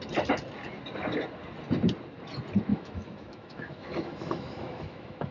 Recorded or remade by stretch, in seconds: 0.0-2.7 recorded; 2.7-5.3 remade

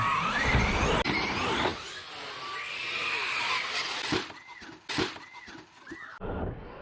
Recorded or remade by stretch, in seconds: 0.0-6.8 recorded

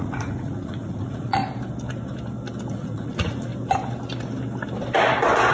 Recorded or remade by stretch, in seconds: 0.0-1.4 remade; 1.4-2.7 recorded; 2.7-3.5 remade; 3.5-5.5 recorded